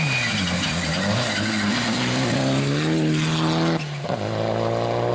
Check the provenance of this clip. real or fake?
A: real